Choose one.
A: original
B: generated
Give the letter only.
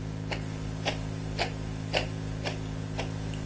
A